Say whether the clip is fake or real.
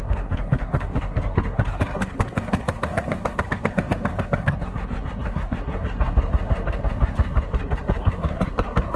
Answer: fake